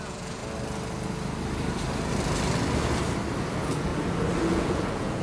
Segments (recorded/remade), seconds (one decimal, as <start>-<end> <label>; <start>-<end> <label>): 0.0-0.4 remade; 0.4-3.4 recorded; 3.4-3.9 remade; 3.9-4.4 recorded; 4.4-5.2 remade